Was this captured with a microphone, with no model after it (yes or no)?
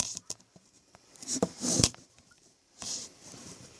no